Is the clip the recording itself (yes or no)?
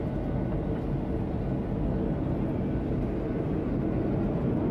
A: yes